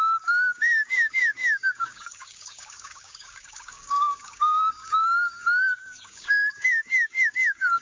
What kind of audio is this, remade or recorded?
remade